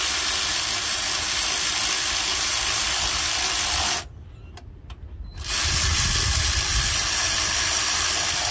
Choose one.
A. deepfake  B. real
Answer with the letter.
B